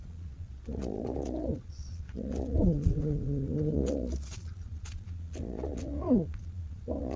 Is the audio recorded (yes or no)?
no